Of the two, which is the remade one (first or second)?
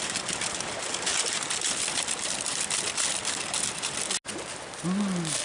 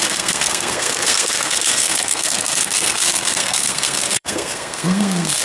second